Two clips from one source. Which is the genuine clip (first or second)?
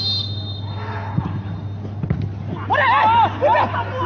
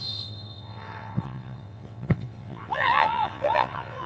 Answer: first